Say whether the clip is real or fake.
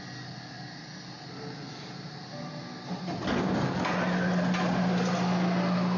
real